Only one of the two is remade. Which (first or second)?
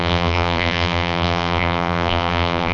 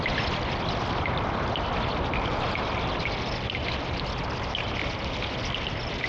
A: first